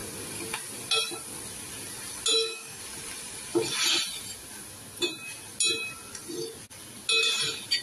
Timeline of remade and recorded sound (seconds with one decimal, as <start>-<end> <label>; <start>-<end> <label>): 0.0-2.3 recorded; 2.3-2.8 remade; 2.8-7.8 recorded